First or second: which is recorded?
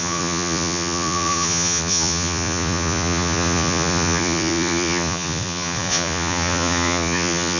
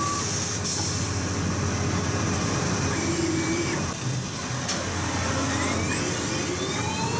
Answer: second